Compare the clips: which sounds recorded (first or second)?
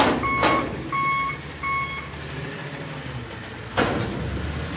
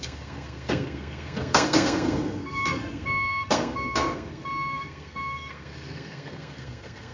first